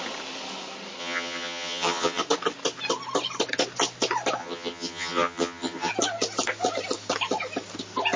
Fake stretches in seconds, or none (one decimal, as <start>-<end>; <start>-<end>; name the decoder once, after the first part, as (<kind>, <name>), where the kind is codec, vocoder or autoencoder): 1.0-2.2 (vocoder, HiFi-GAN); 4.4-5.9